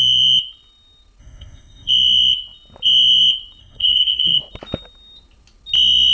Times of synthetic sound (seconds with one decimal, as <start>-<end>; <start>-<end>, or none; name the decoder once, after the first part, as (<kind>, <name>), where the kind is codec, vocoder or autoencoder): 1.2-1.9 (codec, SNAC); 3.6-4.4